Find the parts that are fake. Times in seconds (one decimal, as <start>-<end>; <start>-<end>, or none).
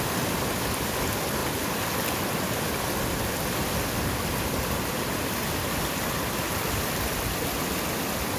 none